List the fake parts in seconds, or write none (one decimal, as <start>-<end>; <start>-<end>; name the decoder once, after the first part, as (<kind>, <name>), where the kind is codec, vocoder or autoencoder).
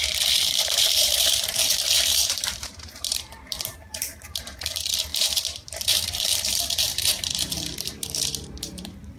0.0-9.2 (vocoder, BigVGAN v2)